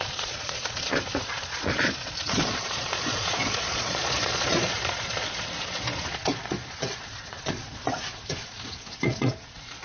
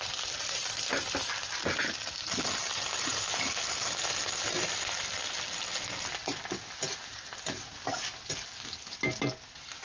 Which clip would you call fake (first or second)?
first